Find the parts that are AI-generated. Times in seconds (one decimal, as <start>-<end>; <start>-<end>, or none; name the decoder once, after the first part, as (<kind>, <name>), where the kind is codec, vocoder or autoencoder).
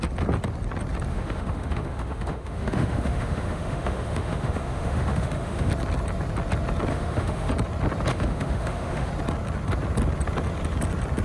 1.1-5.7 (autoencoder, DAC-VAE); 6.9-7.5; 8.1-9.1